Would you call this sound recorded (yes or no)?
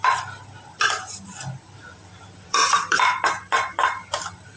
no